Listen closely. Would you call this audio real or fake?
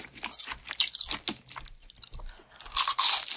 real